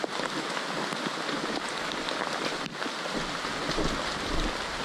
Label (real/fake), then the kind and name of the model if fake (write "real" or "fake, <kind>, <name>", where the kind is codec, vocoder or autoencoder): real